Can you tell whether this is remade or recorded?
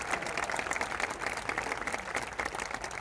recorded